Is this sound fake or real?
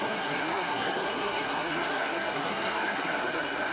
fake